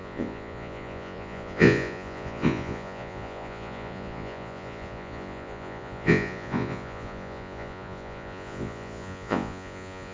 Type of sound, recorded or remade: remade